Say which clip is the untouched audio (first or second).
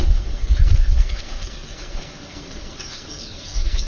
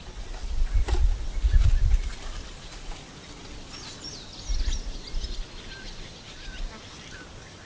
second